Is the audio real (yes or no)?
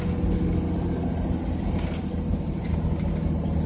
yes